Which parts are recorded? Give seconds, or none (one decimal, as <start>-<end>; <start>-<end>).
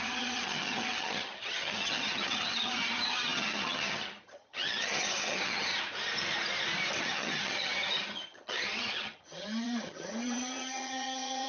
5.7-7.0